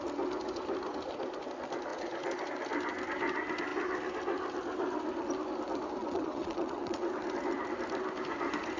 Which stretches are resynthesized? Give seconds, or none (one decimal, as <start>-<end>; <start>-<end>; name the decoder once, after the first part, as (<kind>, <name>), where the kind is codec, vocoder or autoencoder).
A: 6.0-7.2 (vocoder, WaveNeXt)